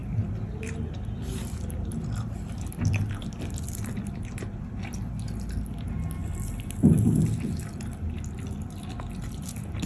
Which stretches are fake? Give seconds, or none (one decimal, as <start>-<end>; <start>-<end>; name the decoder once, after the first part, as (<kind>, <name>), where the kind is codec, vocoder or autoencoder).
0.0-4.8 (vocoder, BigVGAN v2)